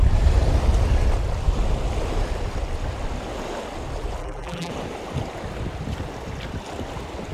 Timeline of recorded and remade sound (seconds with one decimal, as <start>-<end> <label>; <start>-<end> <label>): 0.0-4.2 recorded; 4.2-4.7 remade; 4.7-7.3 recorded